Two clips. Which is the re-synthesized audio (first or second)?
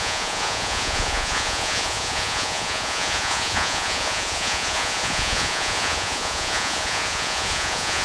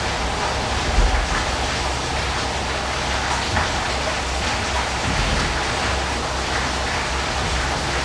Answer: first